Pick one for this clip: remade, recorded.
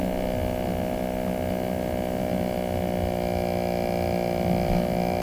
recorded